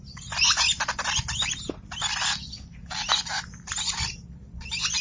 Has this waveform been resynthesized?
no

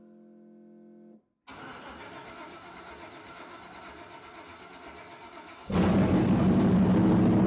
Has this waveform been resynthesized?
no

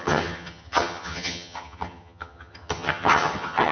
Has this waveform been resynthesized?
yes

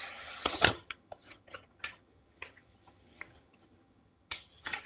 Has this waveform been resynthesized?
yes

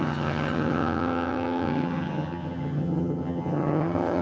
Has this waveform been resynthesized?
yes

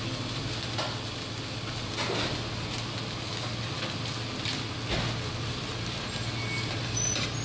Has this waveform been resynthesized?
no